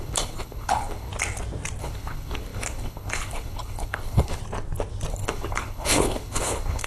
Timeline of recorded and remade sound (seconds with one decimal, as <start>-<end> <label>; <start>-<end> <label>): 0.0-1.1 remade; 1.1-1.8 recorded; 1.8-4.4 remade; 4.4-5.1 recorded; 5.1-6.9 remade

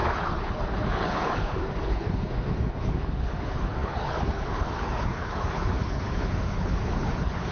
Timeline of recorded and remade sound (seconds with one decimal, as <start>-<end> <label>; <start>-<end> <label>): 0.0-7.5 remade

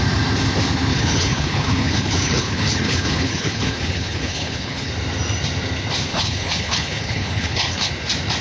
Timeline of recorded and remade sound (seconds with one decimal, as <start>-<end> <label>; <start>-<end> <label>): 0.0-0.9 recorded; 0.9-4.9 remade; 4.9-6.1 recorded; 6.1-7.9 remade; 7.9-8.4 recorded

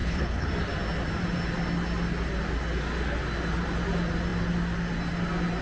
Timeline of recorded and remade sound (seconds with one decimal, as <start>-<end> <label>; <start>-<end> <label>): 0.0-0.5 remade; 0.5-5.6 recorded